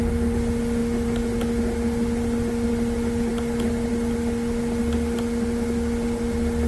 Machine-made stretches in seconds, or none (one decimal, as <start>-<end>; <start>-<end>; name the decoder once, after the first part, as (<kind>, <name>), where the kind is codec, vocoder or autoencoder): none